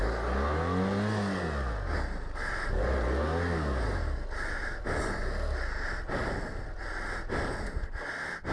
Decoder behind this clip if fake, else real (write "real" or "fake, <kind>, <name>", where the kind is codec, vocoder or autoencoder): real